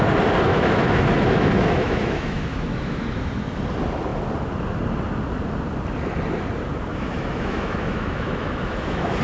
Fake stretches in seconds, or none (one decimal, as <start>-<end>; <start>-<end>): 0.5-3.2; 6.9-9.2